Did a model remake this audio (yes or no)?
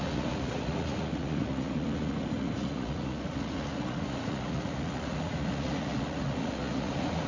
yes